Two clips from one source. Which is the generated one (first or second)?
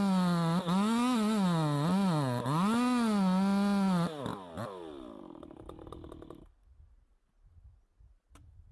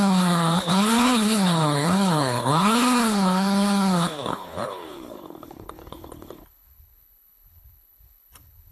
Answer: second